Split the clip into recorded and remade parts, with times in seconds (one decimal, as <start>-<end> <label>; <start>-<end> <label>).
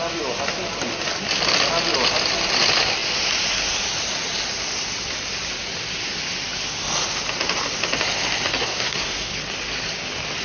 0.0-8.6 recorded; 8.6-9.3 remade; 9.3-10.4 recorded